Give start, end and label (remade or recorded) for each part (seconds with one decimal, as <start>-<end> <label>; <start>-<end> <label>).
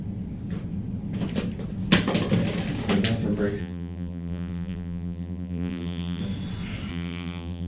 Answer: 0.0-3.6 recorded; 3.6-6.2 remade; 6.2-6.9 recorded; 6.9-7.7 remade